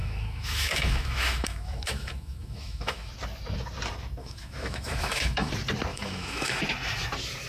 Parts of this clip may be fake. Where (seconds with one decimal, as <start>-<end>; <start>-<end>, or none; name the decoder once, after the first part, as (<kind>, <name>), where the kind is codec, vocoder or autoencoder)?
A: 0.0-3.1 (autoencoder, DAC-VAE); 4.2-5.5; 5.9-6.6